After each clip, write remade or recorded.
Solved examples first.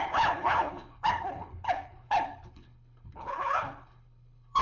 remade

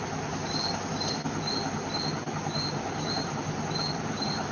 recorded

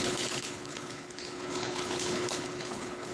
remade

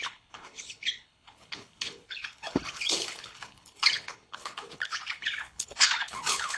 remade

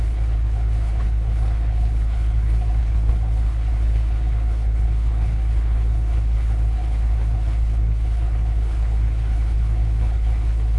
remade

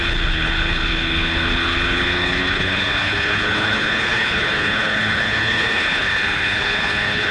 remade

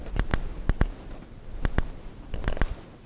recorded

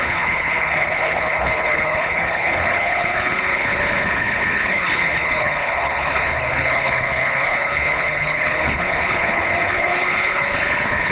remade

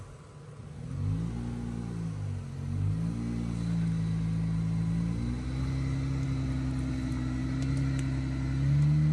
recorded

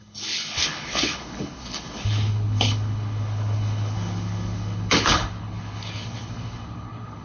remade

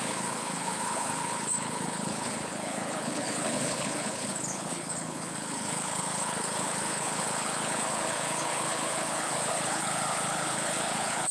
remade